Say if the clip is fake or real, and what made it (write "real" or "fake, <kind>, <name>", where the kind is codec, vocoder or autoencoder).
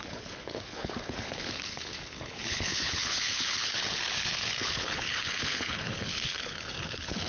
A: fake, codec, HILCodec